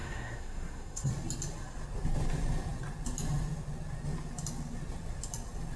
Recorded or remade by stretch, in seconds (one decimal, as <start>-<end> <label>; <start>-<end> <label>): 0.0-1.1 remade; 1.1-5.8 recorded